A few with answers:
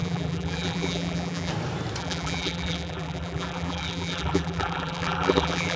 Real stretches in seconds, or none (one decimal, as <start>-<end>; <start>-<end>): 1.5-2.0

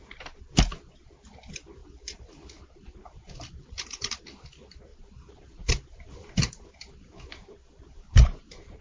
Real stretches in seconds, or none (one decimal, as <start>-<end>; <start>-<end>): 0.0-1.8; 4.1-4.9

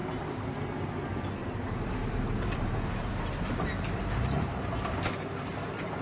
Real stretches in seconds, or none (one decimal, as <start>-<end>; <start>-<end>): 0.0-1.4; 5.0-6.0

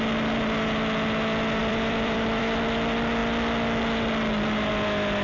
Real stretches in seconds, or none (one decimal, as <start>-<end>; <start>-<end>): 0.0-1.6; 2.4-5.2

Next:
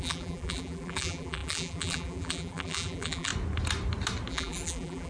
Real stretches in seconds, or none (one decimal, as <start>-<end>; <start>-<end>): 3.3-4.3

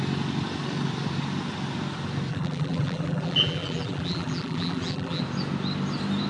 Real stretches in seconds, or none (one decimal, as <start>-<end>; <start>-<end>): 0.0-2.3; 5.2-6.3

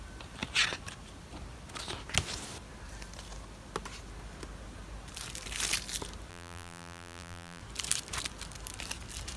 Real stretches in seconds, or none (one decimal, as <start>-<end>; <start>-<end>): 0.0-6.3; 7.6-9.4